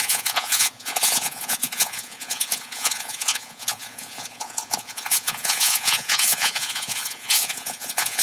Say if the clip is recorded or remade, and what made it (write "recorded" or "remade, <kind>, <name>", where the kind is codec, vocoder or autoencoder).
remade, vocoder, Vocos